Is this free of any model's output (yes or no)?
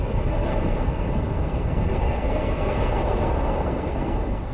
no